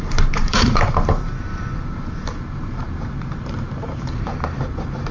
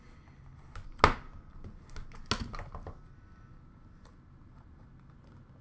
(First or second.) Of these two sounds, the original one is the second